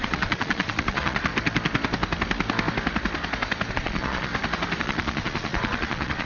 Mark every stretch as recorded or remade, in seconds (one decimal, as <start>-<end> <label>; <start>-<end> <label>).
0.0-1.3 remade; 1.3-3.7 recorded; 3.7-4.3 remade; 4.3-4.8 recorded; 4.8-6.3 remade